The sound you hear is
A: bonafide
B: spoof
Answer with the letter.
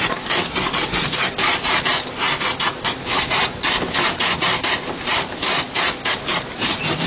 B